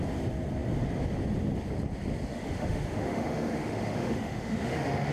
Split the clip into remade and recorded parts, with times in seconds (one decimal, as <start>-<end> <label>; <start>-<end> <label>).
0.0-2.3 recorded; 2.3-5.1 remade